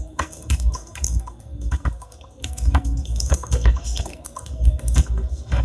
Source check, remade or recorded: remade